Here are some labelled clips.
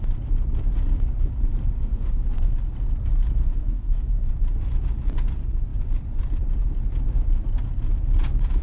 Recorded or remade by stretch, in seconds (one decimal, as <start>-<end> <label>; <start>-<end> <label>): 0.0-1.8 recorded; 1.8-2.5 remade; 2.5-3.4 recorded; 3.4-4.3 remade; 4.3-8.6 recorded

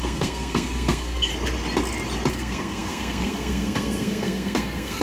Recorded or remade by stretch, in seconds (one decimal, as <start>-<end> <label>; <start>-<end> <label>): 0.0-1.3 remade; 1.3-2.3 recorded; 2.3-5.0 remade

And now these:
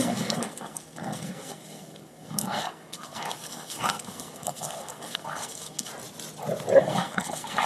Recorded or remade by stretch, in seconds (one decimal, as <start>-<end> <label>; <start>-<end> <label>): 0.0-5.9 remade; 5.9-6.8 recorded; 6.8-7.7 remade